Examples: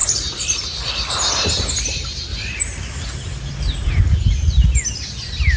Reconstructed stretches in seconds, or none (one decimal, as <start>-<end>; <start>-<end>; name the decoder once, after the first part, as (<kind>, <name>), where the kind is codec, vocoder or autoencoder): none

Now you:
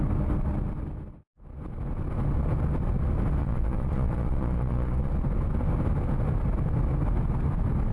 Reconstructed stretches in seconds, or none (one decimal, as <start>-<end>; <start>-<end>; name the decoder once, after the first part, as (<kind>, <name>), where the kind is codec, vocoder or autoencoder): 3.4-5.1 (vocoder, Vocos)

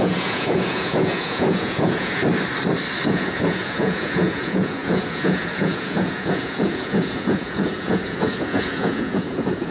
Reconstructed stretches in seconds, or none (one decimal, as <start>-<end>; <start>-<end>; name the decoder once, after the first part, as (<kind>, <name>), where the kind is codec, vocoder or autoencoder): 0.0-2.2 (vocoder, Vocos); 3.1-9.7

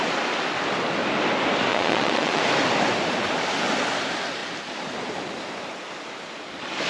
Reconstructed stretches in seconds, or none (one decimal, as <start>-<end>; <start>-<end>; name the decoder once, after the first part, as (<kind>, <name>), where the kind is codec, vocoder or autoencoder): 1.7-2.4 (vocoder, Vocos)

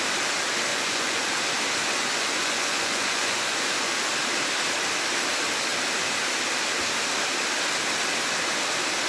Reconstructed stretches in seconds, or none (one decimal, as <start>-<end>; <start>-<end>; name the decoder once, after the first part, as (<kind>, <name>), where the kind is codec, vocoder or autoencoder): 0.7-1.3 (vocoder, Vocos); 1.9-3.9

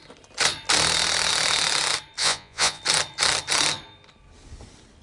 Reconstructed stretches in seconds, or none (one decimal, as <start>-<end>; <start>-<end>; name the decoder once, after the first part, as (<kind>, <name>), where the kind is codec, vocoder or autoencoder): 2.2-2.8 (vocoder, Vocos)